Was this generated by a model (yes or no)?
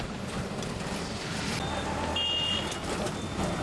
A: no